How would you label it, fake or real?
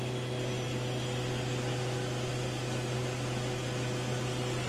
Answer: real